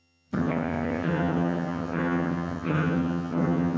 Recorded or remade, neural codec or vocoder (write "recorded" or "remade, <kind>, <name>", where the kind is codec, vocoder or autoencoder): remade, vocoder, HiFi-GAN